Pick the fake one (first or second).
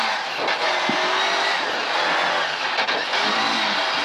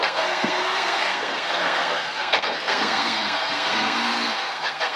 second